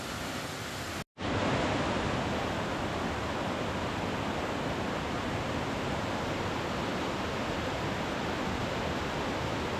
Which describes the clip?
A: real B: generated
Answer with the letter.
A